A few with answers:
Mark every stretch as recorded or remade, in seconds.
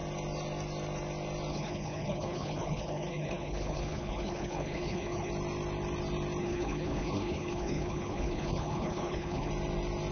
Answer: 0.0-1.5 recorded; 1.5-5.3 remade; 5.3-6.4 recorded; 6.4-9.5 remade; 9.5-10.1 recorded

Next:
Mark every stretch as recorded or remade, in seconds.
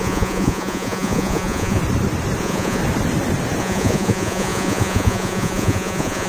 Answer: 0.0-1.8 remade; 1.8-2.4 recorded; 2.4-2.8 remade; 2.8-3.6 recorded; 3.6-6.3 remade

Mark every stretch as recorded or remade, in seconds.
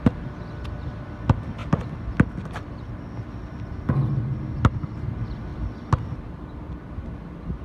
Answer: 0.0-7.6 recorded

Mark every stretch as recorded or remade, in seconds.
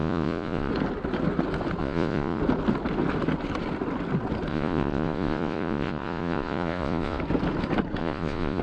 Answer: 0.0-0.7 remade; 0.7-1.8 recorded; 1.8-2.4 remade; 2.4-4.5 recorded; 4.5-7.2 remade; 7.2-8.0 recorded; 8.0-8.6 remade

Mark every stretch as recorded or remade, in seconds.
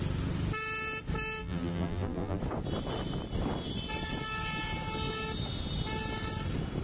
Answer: 0.0-1.4 recorded; 1.4-2.4 remade; 2.4-6.8 recorded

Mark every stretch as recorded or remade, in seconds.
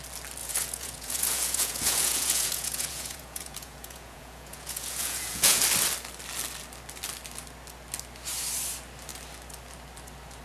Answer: 0.0-0.4 recorded; 0.4-5.6 remade; 5.6-10.4 recorded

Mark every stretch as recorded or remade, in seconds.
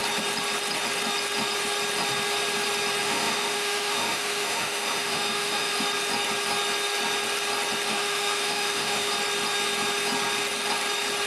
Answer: 0.0-3.0 recorded; 3.0-5.7 remade; 5.7-7.9 recorded; 7.9-9.1 remade; 9.1-11.3 recorded